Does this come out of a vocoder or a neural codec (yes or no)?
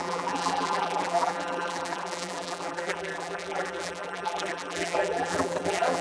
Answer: yes